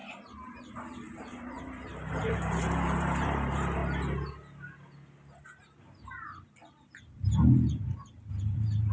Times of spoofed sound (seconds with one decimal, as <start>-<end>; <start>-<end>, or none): 0.0-3.8; 8.3-8.9